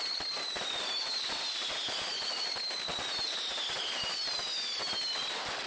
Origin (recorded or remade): recorded